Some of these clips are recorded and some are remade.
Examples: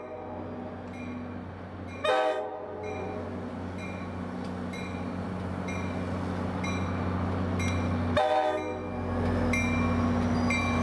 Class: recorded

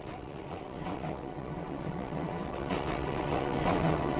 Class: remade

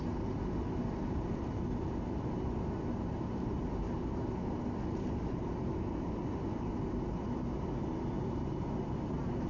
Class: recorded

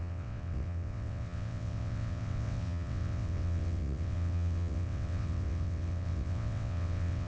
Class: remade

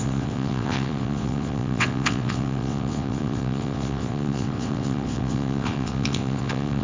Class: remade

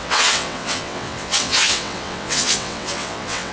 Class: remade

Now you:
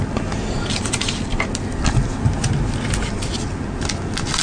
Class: recorded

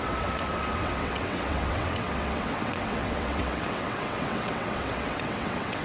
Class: remade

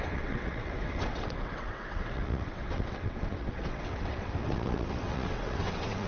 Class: remade